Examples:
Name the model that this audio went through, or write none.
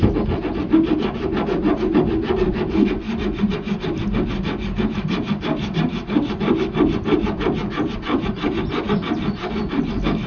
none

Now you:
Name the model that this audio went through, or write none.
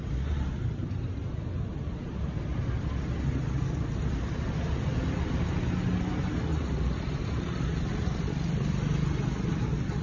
none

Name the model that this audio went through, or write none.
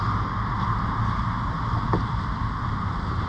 none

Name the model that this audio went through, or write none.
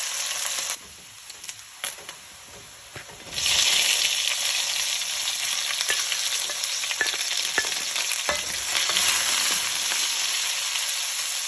none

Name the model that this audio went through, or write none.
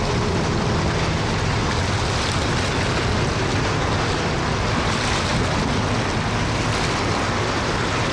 none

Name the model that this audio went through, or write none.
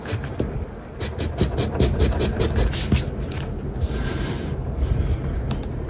none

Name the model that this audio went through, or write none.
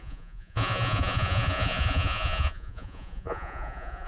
vocoder, Vocos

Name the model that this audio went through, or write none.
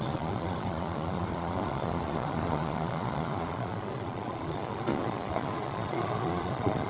vocoder, Vocos